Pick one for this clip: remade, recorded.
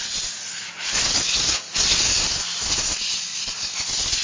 recorded